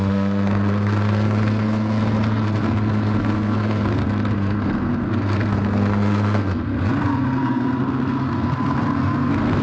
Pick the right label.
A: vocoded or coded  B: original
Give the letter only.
A